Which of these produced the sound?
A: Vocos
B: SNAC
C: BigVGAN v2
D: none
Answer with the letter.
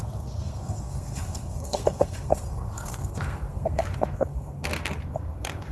B